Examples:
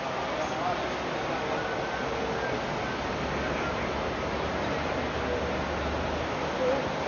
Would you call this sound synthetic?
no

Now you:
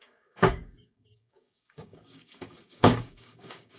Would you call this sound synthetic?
yes